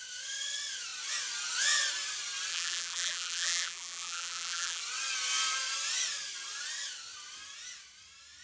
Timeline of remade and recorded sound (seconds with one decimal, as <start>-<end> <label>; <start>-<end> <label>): 0.0-2.5 recorded; 2.5-4.8 remade; 4.8-8.4 recorded